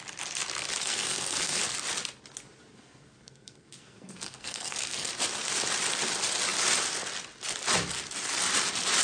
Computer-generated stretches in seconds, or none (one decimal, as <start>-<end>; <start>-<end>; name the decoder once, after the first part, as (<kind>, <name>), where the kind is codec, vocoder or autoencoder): 0.8-1.6 (codec, SNAC); 2.7-5.1